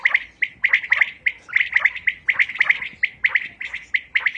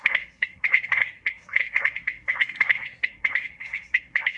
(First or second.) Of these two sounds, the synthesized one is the second